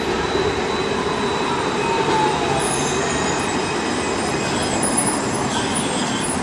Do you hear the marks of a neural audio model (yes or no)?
yes